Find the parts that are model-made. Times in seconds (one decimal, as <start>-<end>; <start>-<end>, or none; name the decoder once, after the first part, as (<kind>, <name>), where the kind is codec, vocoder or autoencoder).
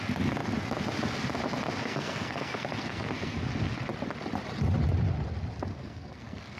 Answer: 1.8-3.4 (codec, SNAC); 5.7-6.6